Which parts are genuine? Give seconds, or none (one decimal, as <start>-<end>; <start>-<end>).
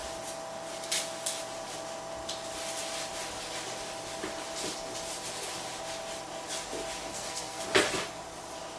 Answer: 0.0-7.1; 7.6-8.8